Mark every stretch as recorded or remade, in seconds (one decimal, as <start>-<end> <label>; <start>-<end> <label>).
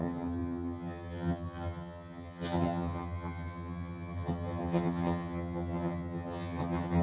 0.0-7.0 remade